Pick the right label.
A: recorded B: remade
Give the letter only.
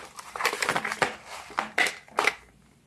A